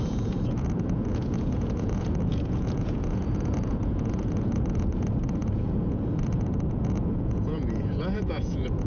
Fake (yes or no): yes